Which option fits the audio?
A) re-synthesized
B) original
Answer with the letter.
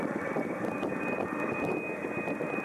B